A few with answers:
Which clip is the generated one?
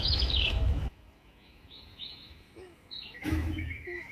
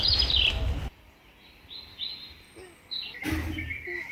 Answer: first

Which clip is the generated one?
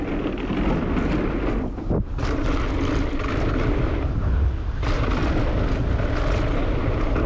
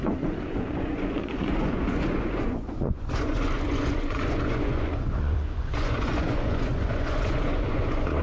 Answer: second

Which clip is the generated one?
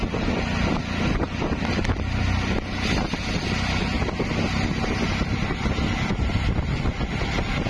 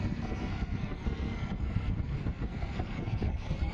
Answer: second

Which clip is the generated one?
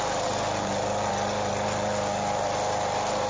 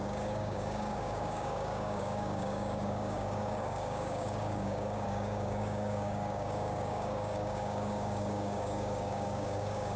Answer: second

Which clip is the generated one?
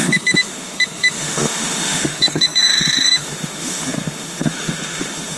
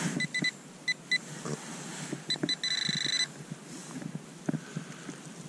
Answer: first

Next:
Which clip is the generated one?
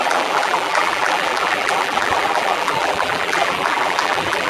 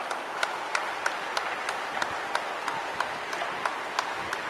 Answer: first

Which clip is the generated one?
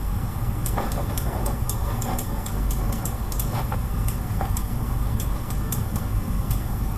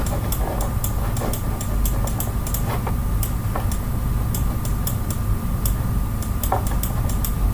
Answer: first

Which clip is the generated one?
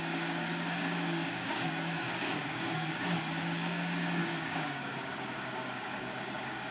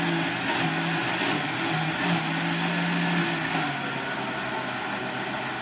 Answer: first